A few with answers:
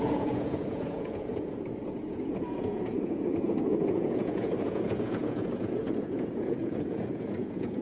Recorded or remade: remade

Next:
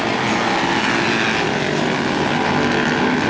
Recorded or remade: recorded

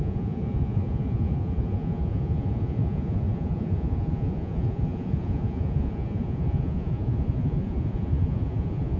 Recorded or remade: remade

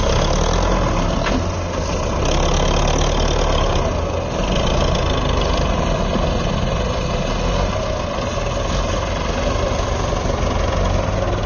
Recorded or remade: recorded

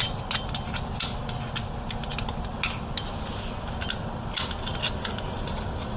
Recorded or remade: recorded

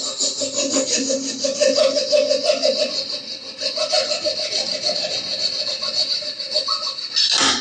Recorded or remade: recorded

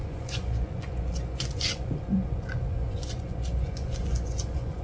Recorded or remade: remade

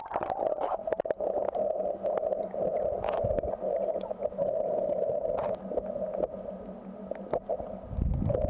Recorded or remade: recorded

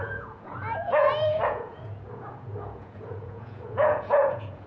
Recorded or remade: remade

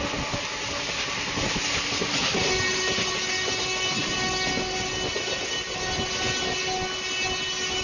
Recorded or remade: recorded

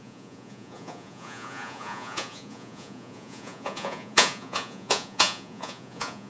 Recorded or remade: remade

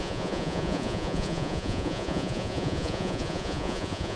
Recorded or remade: remade